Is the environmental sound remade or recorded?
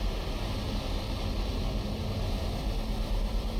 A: recorded